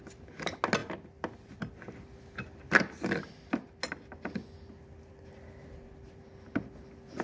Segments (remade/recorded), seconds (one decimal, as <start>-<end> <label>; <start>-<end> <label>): 0.0-7.2 recorded